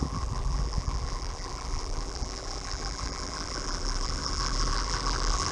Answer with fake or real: fake